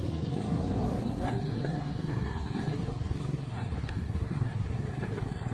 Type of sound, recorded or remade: remade